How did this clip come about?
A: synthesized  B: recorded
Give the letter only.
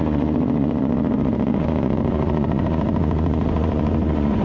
A